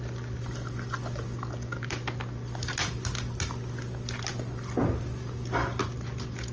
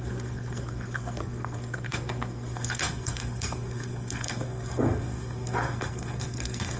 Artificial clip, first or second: second